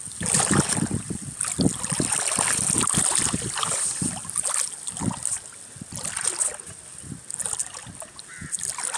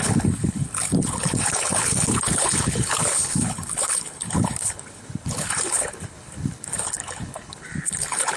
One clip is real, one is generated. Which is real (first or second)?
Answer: first